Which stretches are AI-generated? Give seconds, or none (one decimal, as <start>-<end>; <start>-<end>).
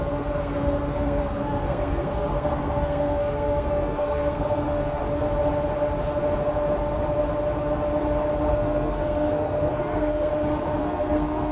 0.0-5.0; 8.5-10.3; 10.8-11.5